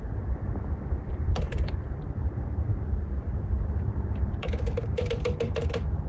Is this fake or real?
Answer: real